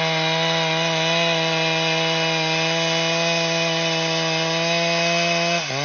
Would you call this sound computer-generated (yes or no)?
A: no